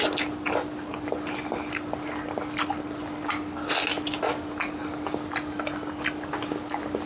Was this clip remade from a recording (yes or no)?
no